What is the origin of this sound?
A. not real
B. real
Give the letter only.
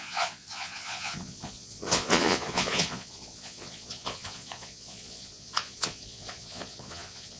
A